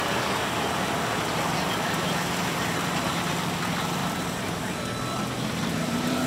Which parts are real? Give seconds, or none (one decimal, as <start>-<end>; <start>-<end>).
0.0-4.0; 4.7-5.6